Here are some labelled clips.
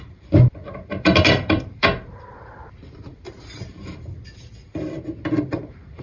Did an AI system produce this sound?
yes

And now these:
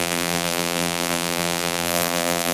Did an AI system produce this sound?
yes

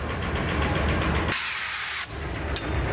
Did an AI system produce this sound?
no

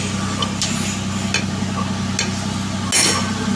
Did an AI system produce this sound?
no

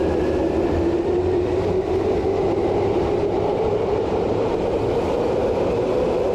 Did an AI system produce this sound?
no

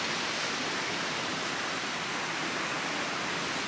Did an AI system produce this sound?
no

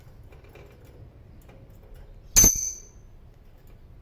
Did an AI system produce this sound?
no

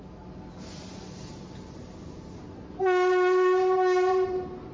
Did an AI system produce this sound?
no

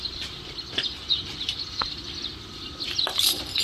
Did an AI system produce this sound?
no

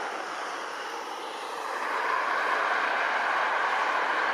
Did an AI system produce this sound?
yes